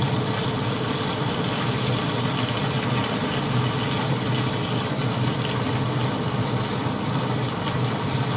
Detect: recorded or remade recorded